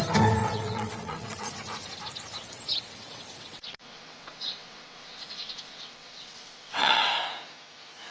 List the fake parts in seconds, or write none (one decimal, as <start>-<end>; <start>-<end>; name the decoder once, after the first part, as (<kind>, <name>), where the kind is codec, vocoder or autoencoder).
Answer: 0.4-1.5 (vocoder, WaveNeXt); 2.4-7.1